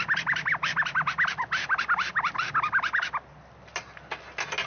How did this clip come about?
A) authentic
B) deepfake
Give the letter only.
A